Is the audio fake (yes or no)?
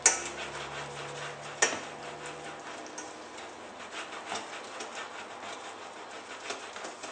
no